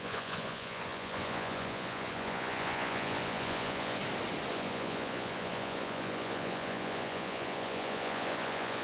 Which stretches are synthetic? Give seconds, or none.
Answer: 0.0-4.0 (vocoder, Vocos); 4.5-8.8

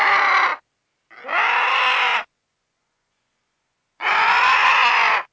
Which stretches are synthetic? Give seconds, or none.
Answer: 2.1-5.3 (vocoder, Vocos)

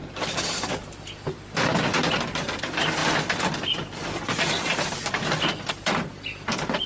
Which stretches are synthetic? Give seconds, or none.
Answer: none

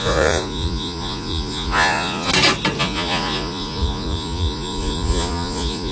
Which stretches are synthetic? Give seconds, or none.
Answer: 0.0-2.3 (vocoder, Vocos); 2.8-5.9

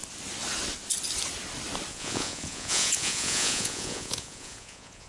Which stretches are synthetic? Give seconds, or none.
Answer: 1.9-5.1 (vocoder, Vocos)